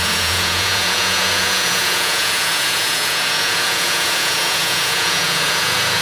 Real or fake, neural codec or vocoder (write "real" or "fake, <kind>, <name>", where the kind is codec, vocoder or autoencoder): fake, vocoder, Vocos